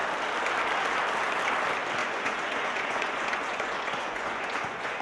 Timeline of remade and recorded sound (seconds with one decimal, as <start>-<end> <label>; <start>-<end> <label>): 0.0-2.0 recorded; 2.0-5.0 remade